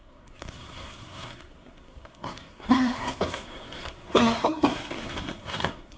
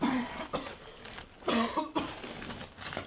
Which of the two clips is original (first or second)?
second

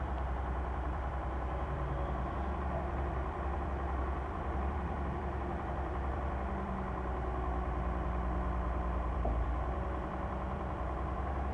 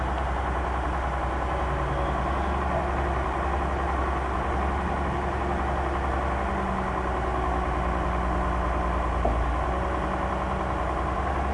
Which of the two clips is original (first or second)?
second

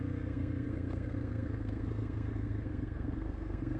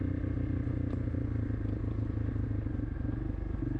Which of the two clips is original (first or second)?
second